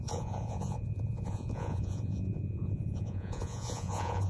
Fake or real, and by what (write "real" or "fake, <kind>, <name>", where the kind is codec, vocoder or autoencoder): fake, vocoder, Vocos